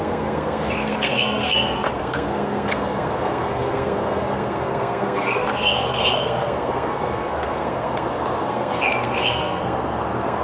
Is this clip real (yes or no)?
no